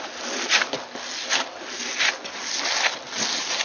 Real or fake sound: real